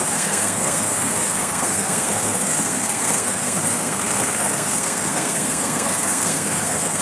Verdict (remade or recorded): remade